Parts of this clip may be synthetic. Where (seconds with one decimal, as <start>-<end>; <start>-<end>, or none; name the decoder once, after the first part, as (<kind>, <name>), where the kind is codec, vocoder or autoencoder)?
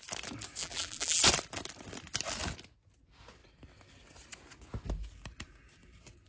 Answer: 0.6-1.2 (vocoder, BigVGAN v2)